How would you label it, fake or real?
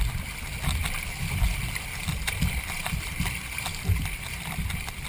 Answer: real